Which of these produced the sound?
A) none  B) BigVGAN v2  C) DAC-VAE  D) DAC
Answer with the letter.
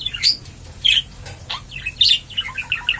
A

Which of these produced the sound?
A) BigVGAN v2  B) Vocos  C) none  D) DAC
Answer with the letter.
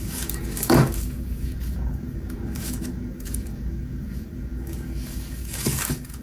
D